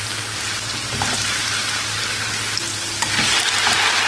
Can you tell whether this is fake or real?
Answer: real